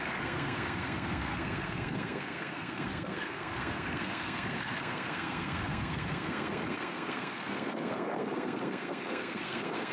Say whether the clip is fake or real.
fake